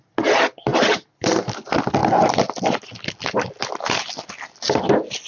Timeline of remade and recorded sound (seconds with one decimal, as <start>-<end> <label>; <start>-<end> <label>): 0.0-0.7 recorded; 0.7-1.3 remade; 1.3-5.3 recorded

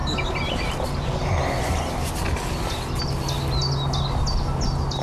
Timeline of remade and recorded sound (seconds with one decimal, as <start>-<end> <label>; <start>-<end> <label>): 0.0-5.0 recorded